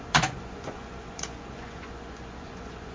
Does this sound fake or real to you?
fake